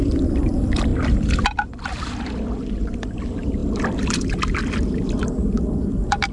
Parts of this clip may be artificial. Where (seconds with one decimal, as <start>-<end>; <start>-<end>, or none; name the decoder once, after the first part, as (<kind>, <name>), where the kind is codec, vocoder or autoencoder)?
0.0-6.3 (vocoder, BigVGAN v2)